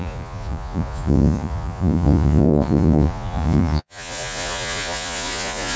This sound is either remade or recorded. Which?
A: remade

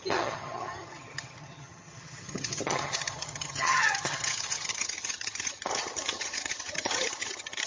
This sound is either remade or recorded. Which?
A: remade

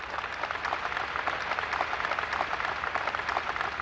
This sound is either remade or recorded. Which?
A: recorded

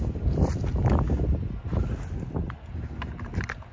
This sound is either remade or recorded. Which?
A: recorded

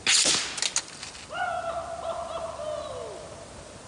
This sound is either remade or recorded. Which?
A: recorded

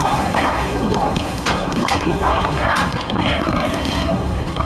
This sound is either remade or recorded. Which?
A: remade